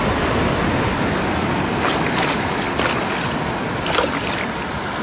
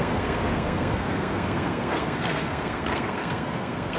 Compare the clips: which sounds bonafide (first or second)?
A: first